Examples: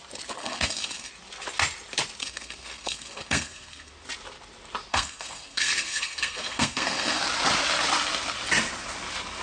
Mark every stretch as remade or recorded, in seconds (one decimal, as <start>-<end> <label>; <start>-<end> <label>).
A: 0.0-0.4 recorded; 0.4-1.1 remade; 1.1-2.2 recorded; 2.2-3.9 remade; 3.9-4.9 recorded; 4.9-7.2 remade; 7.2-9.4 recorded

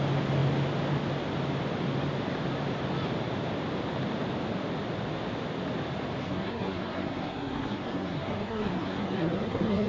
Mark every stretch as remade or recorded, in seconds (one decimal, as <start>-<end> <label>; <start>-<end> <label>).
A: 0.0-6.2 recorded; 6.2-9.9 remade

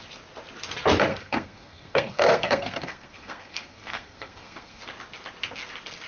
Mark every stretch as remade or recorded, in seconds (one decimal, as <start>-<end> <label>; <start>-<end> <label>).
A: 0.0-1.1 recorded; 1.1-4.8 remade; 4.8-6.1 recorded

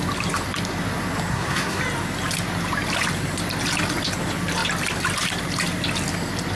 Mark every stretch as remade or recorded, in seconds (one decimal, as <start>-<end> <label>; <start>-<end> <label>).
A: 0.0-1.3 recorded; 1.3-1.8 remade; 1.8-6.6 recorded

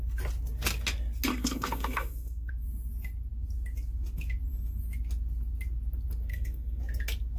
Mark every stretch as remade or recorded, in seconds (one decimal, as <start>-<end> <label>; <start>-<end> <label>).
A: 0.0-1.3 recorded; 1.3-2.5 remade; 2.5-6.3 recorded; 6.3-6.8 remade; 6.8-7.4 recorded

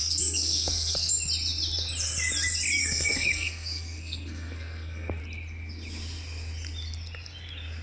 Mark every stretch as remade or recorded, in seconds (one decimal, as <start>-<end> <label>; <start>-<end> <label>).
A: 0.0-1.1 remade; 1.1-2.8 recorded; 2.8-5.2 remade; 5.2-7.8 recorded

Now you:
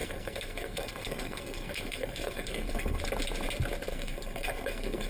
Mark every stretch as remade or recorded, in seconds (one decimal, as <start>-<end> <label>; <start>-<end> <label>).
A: 0.0-3.0 remade; 3.0-3.9 recorded; 3.9-5.1 remade

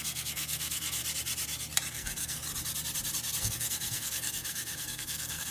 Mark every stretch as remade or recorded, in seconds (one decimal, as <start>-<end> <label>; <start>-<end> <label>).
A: 0.0-1.0 remade; 1.0-1.9 recorded; 1.9-2.4 remade; 2.4-3.4 recorded; 3.4-5.5 remade